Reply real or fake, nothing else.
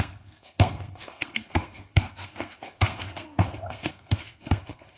fake